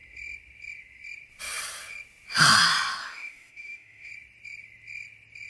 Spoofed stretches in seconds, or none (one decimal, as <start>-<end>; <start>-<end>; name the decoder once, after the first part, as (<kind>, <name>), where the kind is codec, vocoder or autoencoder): 3.0-4.1 (autoencoder, DAC-VAE)